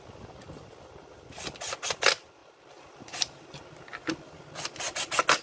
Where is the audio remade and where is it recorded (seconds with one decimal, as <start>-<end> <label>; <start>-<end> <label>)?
0.0-2.4 recorded; 2.4-3.6 remade; 3.6-5.4 recorded